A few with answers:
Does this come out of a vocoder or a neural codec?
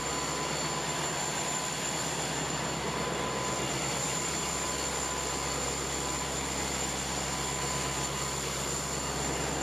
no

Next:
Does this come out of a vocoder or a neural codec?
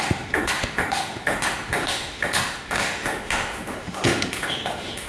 yes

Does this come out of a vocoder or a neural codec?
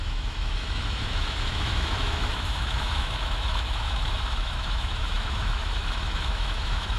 yes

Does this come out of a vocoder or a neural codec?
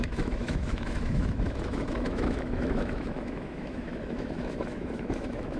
yes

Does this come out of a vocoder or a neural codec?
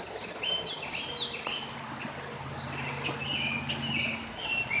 no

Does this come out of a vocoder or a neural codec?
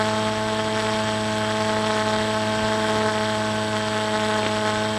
no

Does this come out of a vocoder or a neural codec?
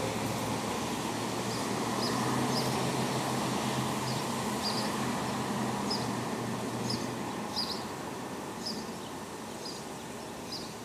no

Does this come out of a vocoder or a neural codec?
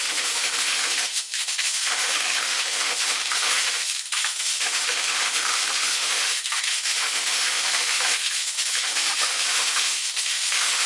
yes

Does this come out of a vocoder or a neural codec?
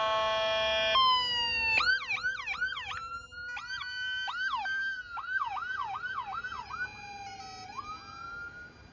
no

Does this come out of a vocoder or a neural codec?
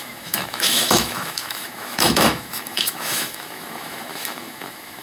yes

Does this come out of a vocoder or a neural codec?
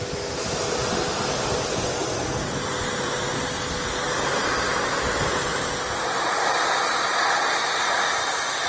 no